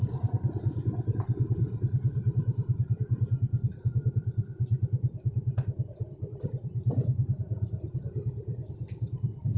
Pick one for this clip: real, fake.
fake